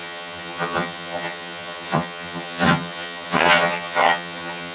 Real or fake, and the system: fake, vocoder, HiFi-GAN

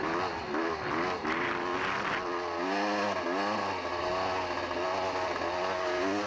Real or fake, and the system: real